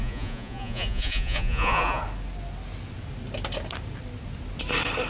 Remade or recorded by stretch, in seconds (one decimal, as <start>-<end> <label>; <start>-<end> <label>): 0.0-2.0 remade; 2.0-5.1 recorded